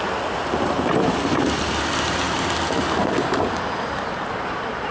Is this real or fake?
real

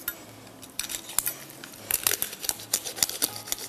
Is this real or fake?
real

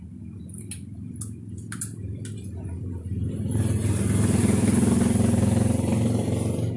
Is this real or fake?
real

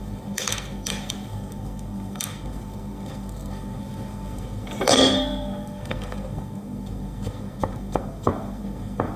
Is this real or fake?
fake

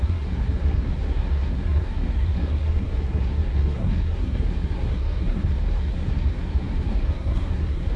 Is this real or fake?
fake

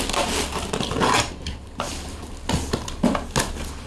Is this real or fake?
real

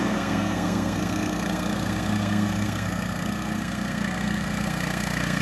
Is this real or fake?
fake